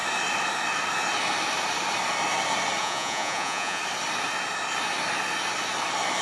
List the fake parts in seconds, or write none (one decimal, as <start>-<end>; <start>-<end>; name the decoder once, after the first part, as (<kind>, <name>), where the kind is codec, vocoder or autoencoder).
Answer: 2.8-3.8 (vocoder, Vocos)

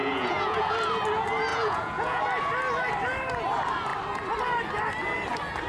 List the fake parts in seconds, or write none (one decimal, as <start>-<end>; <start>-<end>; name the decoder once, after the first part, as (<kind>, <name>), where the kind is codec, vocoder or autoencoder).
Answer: 0.0-0.7 (vocoder, Vocos); 1.5-2.2

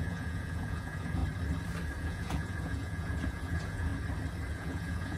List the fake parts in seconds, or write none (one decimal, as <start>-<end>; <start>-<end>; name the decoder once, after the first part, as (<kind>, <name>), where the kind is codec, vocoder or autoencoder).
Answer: 0.0-1.2 (vocoder, Vocos); 2.0-3.9; 4.5-5.2

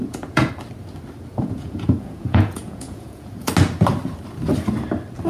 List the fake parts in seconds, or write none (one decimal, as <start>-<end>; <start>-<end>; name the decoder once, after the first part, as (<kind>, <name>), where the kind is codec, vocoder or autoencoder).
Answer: 0.0-0.5 (vocoder, Vocos); 1.3-3.5